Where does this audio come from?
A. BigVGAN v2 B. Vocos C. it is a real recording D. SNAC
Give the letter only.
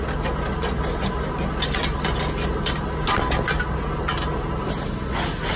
C